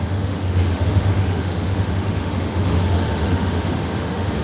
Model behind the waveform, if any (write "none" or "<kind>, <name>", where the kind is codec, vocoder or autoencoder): autoencoder, DAC-VAE